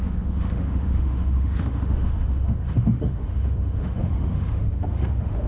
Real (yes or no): no